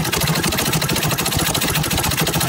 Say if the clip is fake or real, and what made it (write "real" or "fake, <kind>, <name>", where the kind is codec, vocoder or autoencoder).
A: real